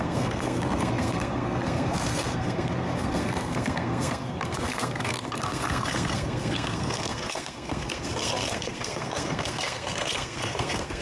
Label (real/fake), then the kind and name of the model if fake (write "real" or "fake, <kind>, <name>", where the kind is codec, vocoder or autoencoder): fake, codec, SNAC